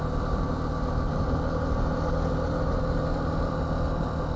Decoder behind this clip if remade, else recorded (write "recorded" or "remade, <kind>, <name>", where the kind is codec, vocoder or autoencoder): recorded